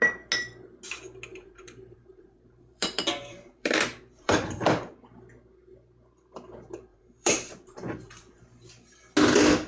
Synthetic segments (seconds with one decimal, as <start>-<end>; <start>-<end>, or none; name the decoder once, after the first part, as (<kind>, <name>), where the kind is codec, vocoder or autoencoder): 1.3-4.9 (vocoder, BigVGAN v2); 6.9-8.4

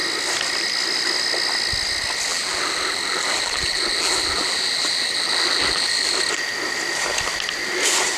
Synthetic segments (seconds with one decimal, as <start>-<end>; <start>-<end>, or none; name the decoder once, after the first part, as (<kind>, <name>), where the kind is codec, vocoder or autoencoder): 2.3-6.2 (vocoder, BigVGAN v2)